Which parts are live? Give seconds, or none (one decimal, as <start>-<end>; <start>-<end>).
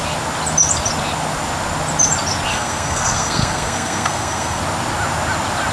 0.0-2.5; 4.6-5.7